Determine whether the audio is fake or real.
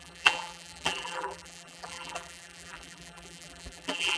fake